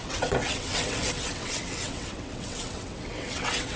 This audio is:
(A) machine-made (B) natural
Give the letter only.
A